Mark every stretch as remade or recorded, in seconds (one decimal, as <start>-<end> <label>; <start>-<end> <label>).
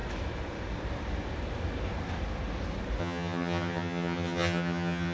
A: 0.0-3.0 recorded; 3.0-5.1 remade